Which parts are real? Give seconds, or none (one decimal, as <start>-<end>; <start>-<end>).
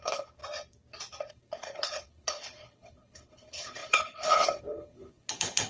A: 0.4-1.3